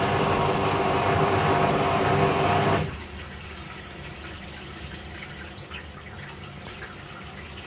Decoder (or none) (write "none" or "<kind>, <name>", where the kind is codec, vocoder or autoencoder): none